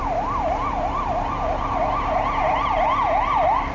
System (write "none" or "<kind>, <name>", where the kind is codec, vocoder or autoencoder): none